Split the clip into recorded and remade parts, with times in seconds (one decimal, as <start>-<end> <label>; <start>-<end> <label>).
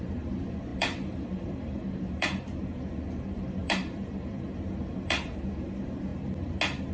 0.0-6.1 remade; 6.1-6.9 recorded